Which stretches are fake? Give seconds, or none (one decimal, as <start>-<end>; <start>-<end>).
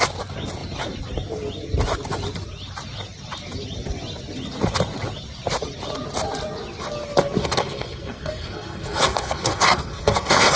7.4-10.6